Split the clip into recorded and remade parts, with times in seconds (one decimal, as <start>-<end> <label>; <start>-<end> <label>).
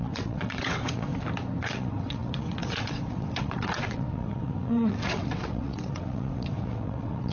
0.0-1.1 remade; 1.1-1.6 recorded; 1.6-7.3 remade